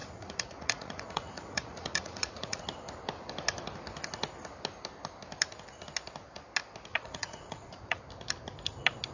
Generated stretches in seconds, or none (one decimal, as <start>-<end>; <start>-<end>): 0.0-2.6; 6.9-8.0